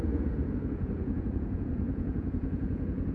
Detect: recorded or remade remade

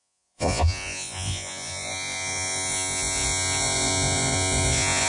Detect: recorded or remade remade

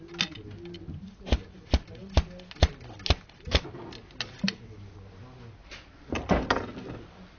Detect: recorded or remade recorded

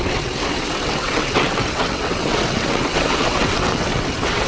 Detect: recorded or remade remade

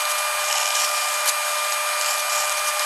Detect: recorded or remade recorded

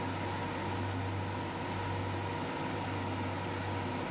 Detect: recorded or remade recorded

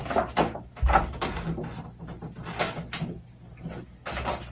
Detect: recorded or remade recorded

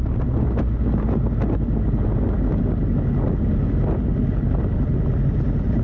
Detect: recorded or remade recorded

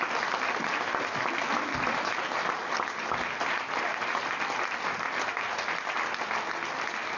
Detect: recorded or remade recorded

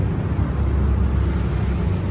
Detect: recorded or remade recorded